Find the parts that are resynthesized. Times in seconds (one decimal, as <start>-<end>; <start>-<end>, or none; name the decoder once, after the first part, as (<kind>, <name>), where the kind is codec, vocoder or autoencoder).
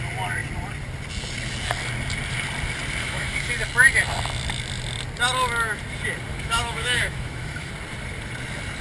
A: 3.0-3.5 (autoencoder, DAC-VAE); 6.3-7.7